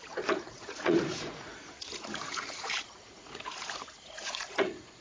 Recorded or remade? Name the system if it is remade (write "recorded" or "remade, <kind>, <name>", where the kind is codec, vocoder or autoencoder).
remade, vocoder, Vocos